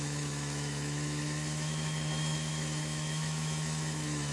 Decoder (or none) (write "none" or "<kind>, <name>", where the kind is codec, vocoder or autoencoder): autoencoder, DAC-VAE